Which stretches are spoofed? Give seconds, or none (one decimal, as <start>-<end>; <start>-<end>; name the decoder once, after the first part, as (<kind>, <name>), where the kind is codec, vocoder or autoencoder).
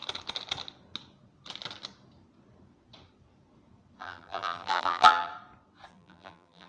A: 4.0-5.3 (vocoder, BigVGAN v2); 5.9-6.7